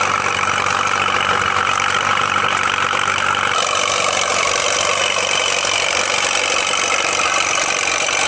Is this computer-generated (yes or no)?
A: no